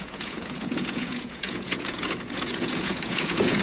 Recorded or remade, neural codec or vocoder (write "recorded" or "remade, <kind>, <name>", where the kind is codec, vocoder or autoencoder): remade, vocoder, Vocos